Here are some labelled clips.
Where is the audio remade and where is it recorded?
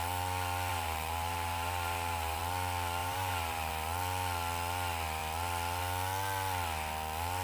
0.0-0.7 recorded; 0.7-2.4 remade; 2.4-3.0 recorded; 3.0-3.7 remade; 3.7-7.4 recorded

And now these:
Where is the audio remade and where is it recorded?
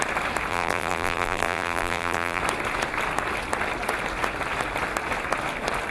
0.0-0.5 recorded; 0.5-2.4 remade; 2.4-5.9 recorded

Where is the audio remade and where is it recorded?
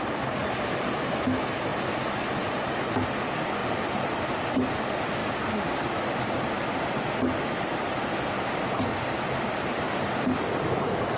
0.0-3.6 recorded; 3.6-4.7 remade; 4.7-8.9 recorded; 8.9-10.1 remade; 10.1-11.2 recorded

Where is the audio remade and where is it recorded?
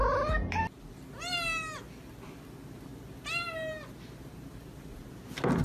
0.0-2.9 recorded; 2.9-5.0 remade; 5.0-5.6 recorded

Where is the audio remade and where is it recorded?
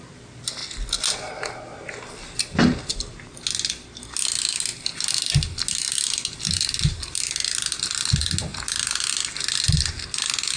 0.0-10.6 recorded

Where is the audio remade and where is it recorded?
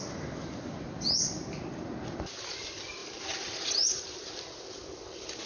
0.0-3.0 recorded; 3.0-4.3 remade; 4.3-5.5 recorded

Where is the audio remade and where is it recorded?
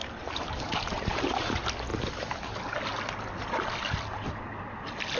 0.0-1.5 remade; 1.5-5.2 recorded